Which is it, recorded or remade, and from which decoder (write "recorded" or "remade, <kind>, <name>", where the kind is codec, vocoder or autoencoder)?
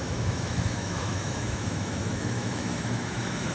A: remade, autoencoder, DAC-VAE